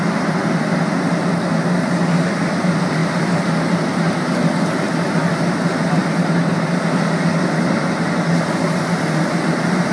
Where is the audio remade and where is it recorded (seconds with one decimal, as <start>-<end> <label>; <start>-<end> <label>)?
0.0-9.9 recorded